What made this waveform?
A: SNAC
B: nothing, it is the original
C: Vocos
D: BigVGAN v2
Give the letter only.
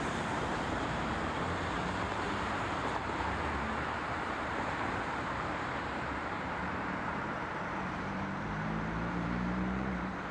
D